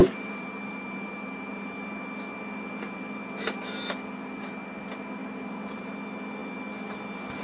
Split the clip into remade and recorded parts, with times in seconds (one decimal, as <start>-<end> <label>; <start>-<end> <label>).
0.0-1.8 remade; 1.8-5.2 recorded; 5.2-6.0 remade; 6.0-7.4 recorded